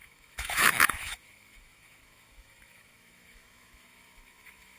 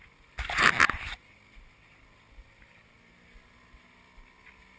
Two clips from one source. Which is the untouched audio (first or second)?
second